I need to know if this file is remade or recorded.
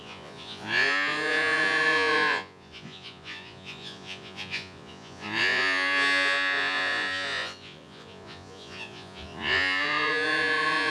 remade